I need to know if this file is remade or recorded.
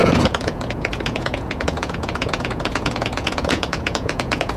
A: remade